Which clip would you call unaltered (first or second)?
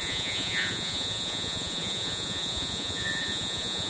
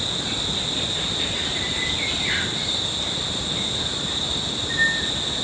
second